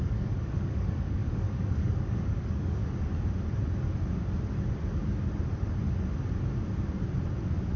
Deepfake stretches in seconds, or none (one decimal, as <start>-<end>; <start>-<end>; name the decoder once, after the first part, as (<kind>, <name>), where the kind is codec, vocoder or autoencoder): 0.0-2.8 (codec, DAC)